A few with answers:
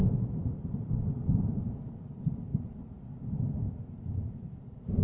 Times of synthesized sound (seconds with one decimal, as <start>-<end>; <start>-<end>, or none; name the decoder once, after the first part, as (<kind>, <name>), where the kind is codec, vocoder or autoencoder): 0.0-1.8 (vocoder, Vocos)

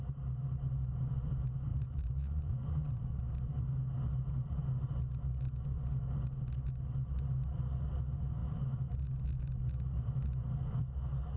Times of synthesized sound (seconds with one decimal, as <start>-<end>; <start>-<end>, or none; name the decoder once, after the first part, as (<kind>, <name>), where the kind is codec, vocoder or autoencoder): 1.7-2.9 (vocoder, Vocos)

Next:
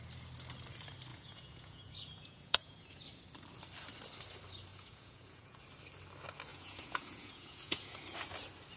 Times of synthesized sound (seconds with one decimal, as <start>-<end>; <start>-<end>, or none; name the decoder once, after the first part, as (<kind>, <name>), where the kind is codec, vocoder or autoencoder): 1.1-3.0 (vocoder, Vocos); 4.7-5.6; 6.5-8.0

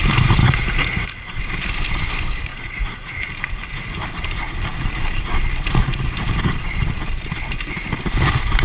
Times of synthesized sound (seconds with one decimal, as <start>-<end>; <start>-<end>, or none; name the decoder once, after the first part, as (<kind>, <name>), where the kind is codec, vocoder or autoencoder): 0.4-1.4 (vocoder, Vocos); 2.5-3.3

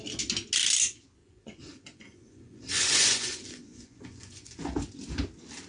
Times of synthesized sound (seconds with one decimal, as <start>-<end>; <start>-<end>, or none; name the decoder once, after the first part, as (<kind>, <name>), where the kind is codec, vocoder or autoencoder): 1.2-4.6 (vocoder, Vocos)